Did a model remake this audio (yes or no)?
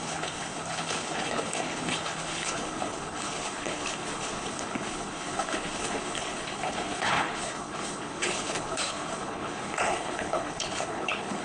yes